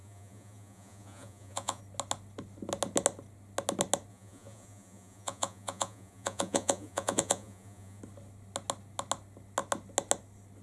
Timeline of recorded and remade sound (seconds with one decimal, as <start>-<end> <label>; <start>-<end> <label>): 0.0-1.8 remade; 1.8-4.1 recorded; 4.1-8.0 remade; 8.0-10.6 recorded

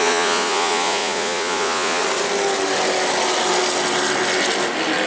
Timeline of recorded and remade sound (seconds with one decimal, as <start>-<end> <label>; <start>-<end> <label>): 0.0-2.0 remade; 2.0-5.1 recorded